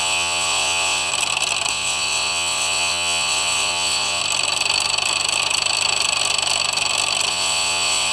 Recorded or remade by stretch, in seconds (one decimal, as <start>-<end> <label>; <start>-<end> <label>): 0.0-1.1 remade; 1.1-1.7 recorded; 1.7-4.2 remade; 4.2-7.3 recorded; 7.3-8.1 remade